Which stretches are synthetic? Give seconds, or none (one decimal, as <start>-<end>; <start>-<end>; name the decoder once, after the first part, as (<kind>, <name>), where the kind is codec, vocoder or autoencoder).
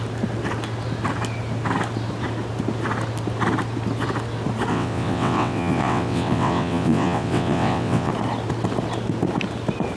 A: 4.7-8.1 (vocoder, WaveNeXt)